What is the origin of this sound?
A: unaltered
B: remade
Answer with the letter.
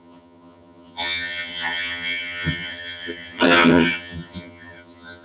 B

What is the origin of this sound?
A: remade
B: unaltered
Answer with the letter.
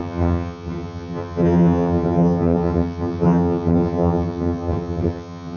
A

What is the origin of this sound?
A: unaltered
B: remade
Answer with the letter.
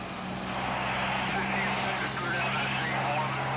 A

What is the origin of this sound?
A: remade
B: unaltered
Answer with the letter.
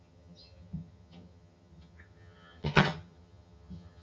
A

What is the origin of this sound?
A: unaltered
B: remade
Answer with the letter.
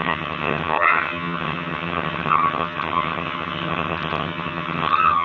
B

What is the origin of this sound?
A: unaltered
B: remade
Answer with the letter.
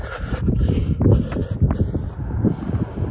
A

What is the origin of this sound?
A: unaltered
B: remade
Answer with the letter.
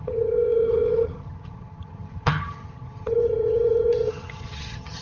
B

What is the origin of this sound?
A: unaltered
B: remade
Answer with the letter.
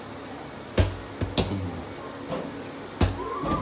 A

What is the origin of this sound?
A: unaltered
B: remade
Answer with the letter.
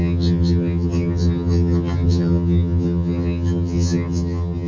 B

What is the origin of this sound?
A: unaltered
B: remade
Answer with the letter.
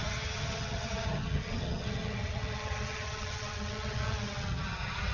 B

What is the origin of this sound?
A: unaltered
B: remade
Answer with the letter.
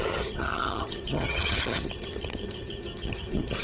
B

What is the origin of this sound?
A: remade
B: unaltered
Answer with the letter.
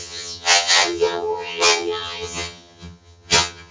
A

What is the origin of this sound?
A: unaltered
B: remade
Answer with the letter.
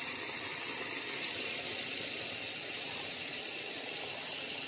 A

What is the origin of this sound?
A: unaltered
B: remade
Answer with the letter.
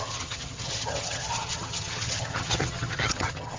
B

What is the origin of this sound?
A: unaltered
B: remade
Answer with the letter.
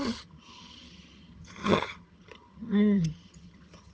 B